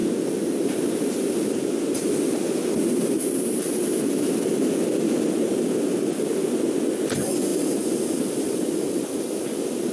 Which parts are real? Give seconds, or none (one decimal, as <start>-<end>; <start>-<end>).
2.3-7.5